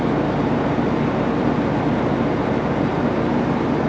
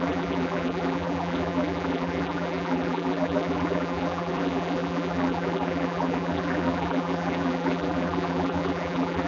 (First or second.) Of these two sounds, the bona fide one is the first